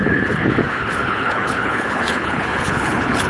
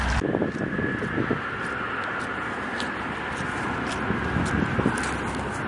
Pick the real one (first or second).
second